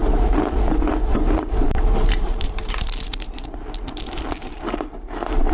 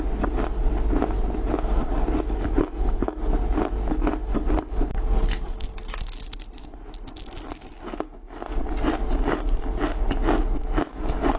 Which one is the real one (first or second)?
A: second